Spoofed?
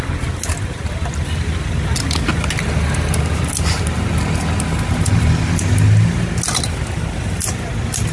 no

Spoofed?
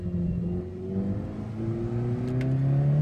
no